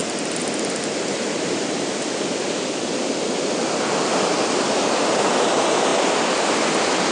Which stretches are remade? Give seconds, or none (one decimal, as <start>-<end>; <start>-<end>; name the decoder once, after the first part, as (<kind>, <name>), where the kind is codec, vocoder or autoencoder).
none

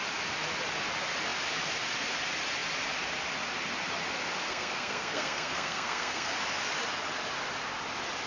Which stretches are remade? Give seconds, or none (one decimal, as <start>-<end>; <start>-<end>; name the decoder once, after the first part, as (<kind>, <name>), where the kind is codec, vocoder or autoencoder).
4.5-6.3 (codec, SNAC)

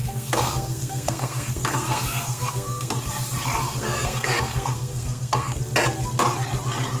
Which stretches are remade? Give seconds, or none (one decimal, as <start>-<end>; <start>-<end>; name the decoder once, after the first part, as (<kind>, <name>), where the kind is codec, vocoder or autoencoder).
0.0-3.1 (codec, SNAC); 3.6-5.6

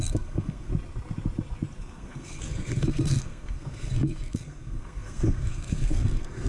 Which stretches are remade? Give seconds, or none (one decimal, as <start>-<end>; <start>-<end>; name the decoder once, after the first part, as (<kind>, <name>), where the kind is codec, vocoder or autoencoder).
0.0-0.7 (codec, SNAC); 1.8-6.5

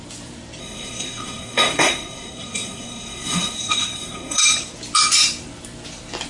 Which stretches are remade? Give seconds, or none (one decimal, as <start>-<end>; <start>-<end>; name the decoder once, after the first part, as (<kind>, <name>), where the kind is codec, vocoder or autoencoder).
0.6-4.4 (codec, SNAC)

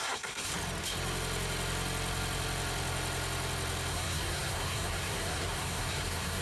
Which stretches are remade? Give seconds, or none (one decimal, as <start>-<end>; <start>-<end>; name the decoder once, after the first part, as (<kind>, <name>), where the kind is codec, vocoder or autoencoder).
0.0-0.5 (codec, SNAC); 3.9-6.4

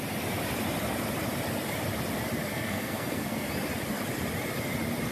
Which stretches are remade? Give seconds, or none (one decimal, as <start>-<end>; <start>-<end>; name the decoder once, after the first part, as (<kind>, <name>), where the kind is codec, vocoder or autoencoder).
2.5-3.5 (codec, SNAC)

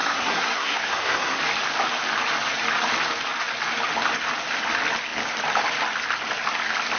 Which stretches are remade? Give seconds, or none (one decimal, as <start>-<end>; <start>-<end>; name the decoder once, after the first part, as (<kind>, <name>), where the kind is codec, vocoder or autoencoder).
0.0-1.4 (codec, SNAC)